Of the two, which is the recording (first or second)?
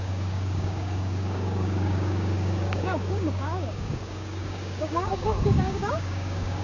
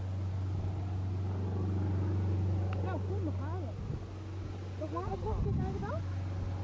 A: second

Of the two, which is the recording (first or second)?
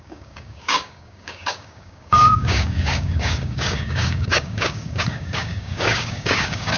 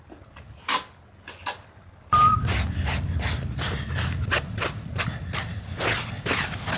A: second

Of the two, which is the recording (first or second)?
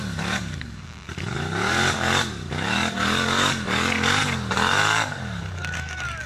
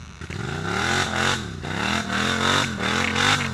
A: second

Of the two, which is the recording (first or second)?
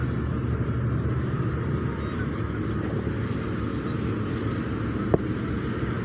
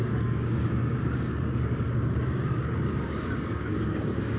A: first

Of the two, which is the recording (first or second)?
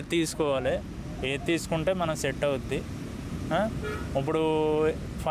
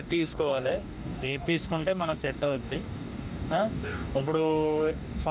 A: first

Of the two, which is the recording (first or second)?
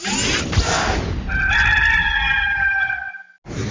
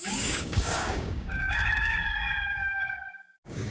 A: first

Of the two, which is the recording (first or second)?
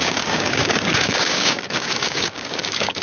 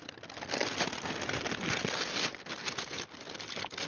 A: second